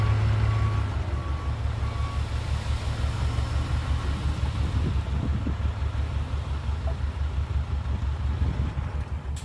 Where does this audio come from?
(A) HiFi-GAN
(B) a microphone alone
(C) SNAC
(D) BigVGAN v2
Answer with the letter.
B